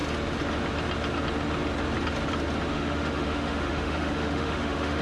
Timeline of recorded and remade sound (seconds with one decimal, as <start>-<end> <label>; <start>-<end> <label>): 0.0-2.7 recorded; 2.7-5.0 remade